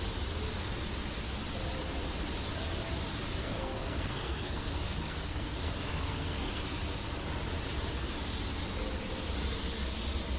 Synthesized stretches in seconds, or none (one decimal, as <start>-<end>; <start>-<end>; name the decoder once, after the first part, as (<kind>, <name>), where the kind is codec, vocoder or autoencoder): 3.4-6.6 (codec, SNAC)